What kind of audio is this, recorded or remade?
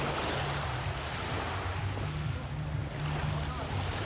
recorded